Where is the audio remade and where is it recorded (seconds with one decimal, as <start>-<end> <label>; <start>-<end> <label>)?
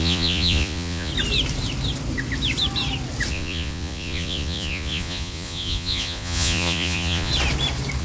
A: 0.0-1.1 remade; 1.1-3.3 recorded; 3.3-7.3 remade; 7.3-8.0 recorded